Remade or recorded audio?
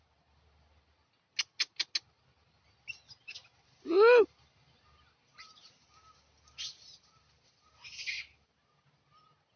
recorded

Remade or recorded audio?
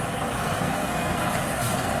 remade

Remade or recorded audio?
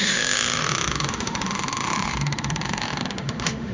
remade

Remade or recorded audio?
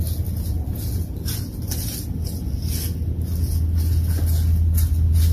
recorded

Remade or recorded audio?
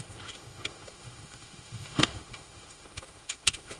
remade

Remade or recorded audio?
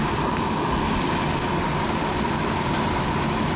recorded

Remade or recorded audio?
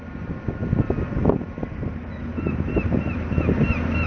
recorded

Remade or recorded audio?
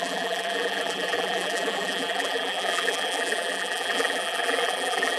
remade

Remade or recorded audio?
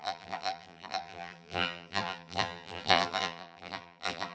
remade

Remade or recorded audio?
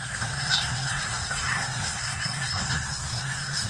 remade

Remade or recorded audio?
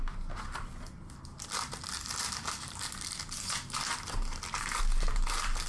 recorded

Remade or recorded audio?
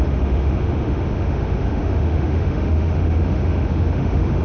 remade